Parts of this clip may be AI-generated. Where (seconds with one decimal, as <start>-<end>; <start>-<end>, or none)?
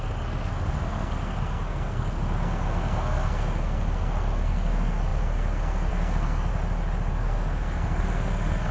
0.0-6.5; 7.1-8.7